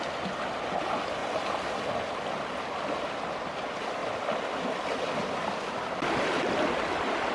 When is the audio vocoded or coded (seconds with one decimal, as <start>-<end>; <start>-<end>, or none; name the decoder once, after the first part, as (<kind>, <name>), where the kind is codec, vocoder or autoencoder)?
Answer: none